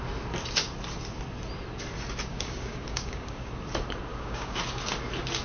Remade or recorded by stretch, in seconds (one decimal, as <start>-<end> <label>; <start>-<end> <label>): 0.0-2.3 recorded; 2.3-3.5 remade; 3.5-4.1 recorded; 4.1-4.6 remade; 4.6-5.4 recorded